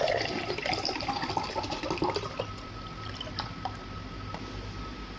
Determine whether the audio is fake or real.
real